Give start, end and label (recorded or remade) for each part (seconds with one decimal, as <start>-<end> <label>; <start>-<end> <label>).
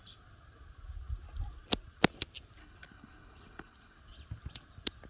0.0-2.6 recorded; 2.6-4.0 remade; 4.0-5.1 recorded